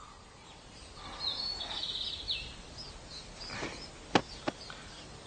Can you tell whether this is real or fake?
real